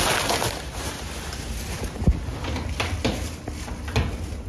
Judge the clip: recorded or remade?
recorded